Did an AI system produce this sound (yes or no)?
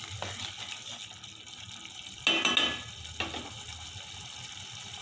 no